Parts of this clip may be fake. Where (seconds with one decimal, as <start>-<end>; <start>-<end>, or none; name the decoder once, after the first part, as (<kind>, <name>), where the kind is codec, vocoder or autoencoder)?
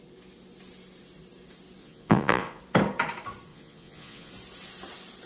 1.8-2.6 (vocoder, Vocos); 3.5-4.3